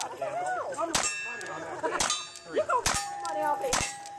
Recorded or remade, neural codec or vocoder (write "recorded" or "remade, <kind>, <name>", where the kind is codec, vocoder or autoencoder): recorded